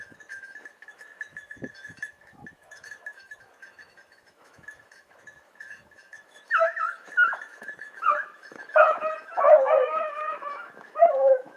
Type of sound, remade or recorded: remade